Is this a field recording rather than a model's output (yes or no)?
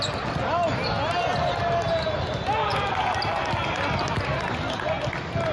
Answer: yes